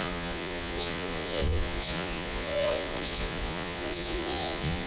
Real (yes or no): no